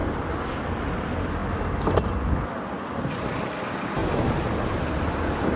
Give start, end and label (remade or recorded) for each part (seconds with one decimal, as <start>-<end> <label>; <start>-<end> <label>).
0.0-5.6 recorded

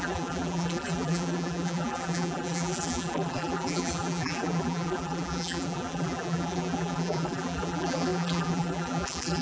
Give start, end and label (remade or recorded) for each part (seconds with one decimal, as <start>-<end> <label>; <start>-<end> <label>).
0.0-9.4 remade